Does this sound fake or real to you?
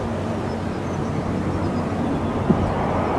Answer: real